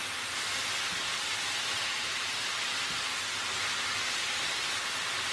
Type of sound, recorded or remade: recorded